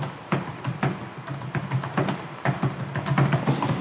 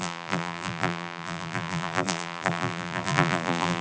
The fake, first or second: second